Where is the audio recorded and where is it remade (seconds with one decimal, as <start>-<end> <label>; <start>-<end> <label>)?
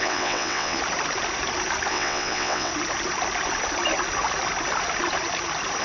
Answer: 0.0-0.8 remade; 0.8-1.9 recorded; 1.9-2.7 remade; 2.7-5.8 recorded